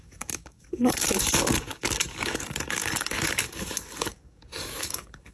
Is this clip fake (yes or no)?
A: yes